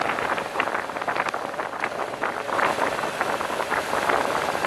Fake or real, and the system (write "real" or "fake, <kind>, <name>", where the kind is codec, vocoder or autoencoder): real